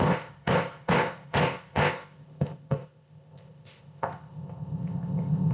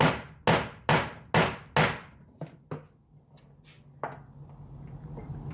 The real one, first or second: second